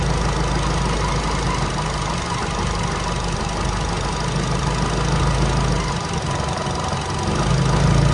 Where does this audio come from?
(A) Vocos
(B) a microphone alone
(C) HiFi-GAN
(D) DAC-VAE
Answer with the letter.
B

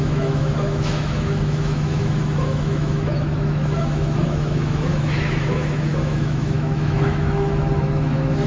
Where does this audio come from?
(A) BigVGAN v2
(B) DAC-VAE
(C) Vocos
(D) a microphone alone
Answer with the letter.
B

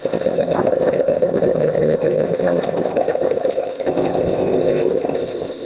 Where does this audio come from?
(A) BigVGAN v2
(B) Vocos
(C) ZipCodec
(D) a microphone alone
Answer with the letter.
C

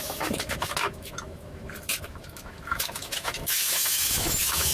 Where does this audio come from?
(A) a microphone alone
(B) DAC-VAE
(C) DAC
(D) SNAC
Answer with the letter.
B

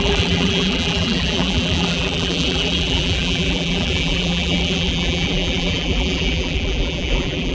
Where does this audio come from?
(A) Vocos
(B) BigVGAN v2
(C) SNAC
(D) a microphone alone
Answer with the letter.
B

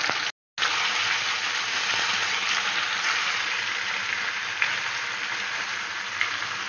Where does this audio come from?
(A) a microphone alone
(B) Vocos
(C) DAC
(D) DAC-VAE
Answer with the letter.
A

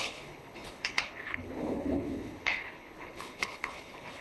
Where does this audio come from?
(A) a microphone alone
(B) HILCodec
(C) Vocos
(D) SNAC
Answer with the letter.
B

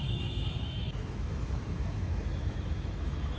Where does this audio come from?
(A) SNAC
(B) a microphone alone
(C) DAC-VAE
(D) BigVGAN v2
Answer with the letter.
C